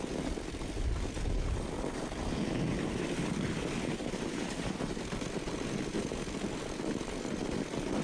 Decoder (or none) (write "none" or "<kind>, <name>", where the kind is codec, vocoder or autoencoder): none